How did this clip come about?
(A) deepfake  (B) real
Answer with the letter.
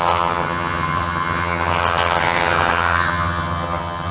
A